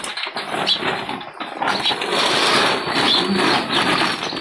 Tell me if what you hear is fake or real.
real